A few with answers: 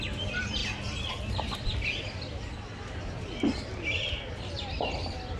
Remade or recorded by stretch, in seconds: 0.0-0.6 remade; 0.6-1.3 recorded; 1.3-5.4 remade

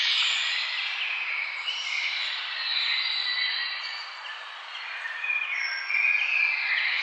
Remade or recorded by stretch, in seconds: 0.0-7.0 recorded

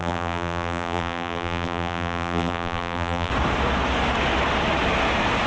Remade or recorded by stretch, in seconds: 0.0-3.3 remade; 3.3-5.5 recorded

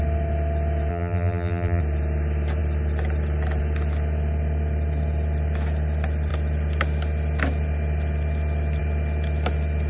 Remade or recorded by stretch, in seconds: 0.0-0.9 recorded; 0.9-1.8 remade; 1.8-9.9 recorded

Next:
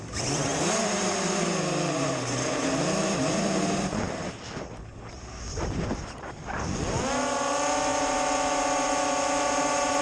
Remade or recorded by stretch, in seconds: 0.0-0.5 recorded; 0.5-4.4 remade; 4.4-4.9 recorded; 4.9-6.6 remade; 6.6-7.9 recorded; 7.9-10.0 remade